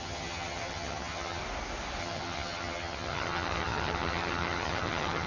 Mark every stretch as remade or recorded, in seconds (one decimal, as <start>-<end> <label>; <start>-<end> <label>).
0.0-1.4 remade; 1.4-2.0 recorded; 2.0-5.3 remade

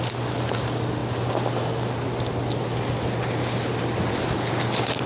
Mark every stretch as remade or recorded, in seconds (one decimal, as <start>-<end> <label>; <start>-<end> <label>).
0.0-5.1 recorded

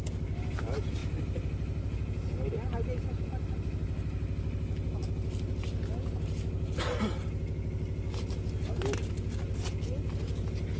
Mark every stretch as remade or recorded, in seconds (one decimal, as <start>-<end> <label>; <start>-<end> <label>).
0.0-10.8 recorded

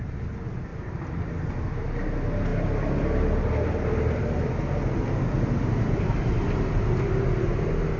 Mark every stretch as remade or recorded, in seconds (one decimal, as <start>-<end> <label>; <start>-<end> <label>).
0.0-8.0 recorded

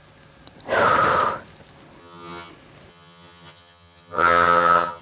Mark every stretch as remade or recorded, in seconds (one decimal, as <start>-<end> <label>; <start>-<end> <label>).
0.0-2.0 recorded; 2.0-2.5 remade; 2.5-2.9 recorded; 2.9-5.0 remade

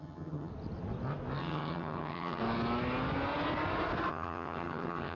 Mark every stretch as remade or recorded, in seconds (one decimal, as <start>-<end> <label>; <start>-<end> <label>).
0.0-0.5 remade; 0.5-1.4 recorded; 1.4-2.4 remade; 2.4-4.1 recorded; 4.1-5.2 remade

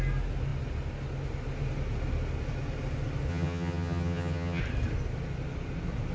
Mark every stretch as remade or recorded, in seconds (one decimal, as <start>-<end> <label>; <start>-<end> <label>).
0.0-3.3 recorded; 3.3-4.6 remade; 4.6-6.1 recorded

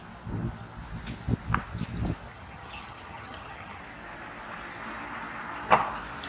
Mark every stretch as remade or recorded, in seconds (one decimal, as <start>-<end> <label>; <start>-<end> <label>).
0.0-2.3 recorded; 2.3-3.8 remade; 3.8-6.3 recorded